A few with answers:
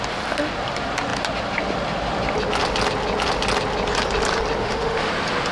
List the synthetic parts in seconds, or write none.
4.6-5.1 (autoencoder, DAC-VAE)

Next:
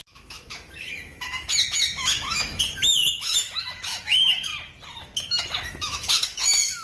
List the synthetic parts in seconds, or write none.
0.0-4.5 (autoencoder, DAC-VAE); 5.0-6.8

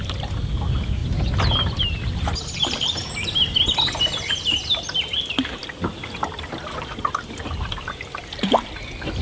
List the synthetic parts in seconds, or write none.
none